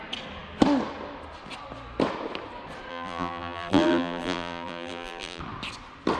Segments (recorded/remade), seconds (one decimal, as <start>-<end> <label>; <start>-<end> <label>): 0.0-2.9 recorded; 2.9-5.4 remade; 5.4-6.2 recorded